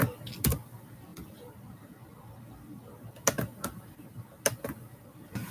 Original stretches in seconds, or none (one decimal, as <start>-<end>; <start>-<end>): 0.0-5.5